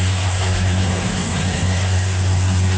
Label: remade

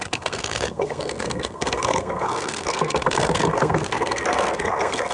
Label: remade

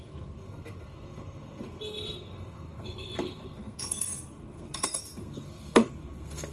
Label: remade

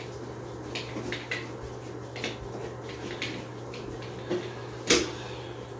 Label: recorded